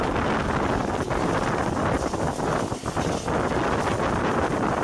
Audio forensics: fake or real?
real